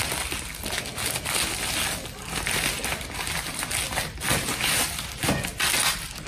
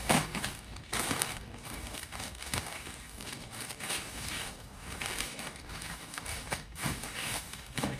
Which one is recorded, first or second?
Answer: first